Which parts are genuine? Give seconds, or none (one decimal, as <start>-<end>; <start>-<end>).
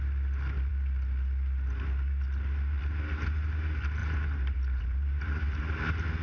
0.0-4.0; 5.8-6.2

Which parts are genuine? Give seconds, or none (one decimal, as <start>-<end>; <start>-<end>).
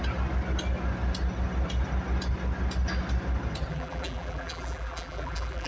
0.0-3.7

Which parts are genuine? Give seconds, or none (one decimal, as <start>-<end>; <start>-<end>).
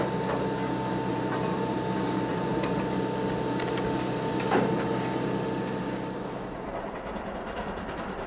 0.0-1.1; 2.5-6.9